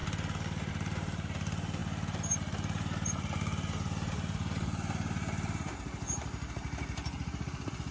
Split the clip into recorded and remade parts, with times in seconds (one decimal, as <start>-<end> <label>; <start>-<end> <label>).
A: 0.0-0.7 recorded; 0.7-7.9 remade

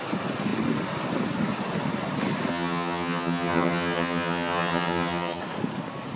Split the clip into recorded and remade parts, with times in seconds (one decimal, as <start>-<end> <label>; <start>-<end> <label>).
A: 0.0-2.5 recorded; 2.5-5.4 remade; 5.4-6.2 recorded

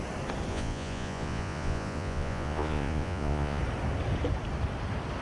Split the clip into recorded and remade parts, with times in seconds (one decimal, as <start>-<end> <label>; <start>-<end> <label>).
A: 0.0-0.5 recorded; 0.5-3.6 remade; 3.6-5.2 recorded